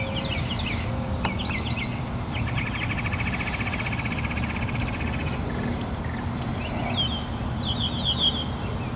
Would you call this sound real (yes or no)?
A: yes